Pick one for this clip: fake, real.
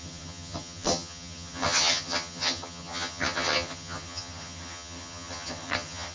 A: fake